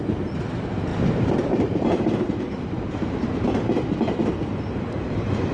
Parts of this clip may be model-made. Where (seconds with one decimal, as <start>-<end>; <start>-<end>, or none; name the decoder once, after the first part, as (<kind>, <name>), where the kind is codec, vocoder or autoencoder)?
0.9-4.2 (vocoder, BigVGAN v2)